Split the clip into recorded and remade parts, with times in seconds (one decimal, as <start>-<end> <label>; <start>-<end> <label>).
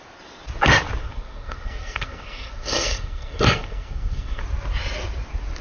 0.0-1.0 recorded; 1.0-4.4 remade; 4.4-5.6 recorded